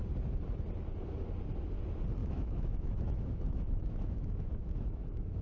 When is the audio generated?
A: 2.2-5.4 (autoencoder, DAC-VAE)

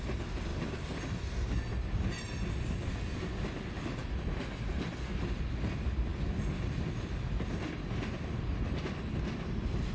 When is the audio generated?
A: none

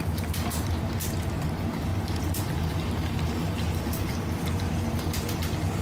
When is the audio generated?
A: 3.4-4.0 (vocoder, BigVGAN v2)

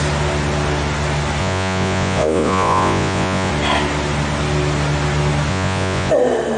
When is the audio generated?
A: 1.4-3.5 (vocoder, Vocos); 5.5-6.1

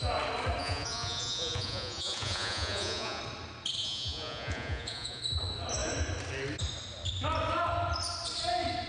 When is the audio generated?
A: 0.6-3.2 (vocoder, Vocos); 3.8-5.2

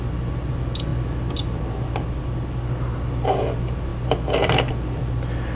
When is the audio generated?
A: none

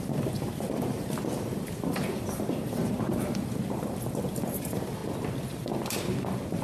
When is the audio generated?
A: 0.0-5.0 (vocoder, BigVGAN v2)

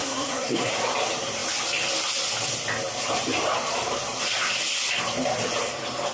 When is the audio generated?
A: 0.0-0.7 (codec, SNAC)